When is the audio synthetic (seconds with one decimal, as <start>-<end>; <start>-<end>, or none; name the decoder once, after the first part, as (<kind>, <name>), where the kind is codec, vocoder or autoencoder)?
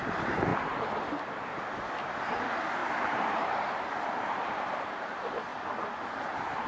0.0-0.5 (vocoder, BigVGAN v2); 2.4-5.5; 6.0-6.7